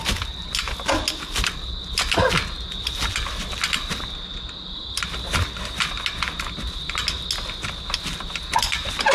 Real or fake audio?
real